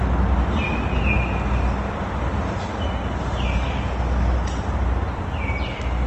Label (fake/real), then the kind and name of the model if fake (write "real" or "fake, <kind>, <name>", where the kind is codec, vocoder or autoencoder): real